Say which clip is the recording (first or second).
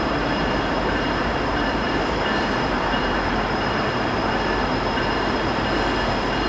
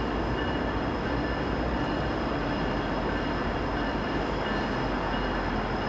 second